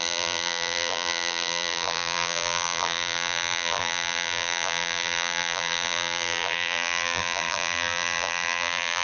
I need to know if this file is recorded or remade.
remade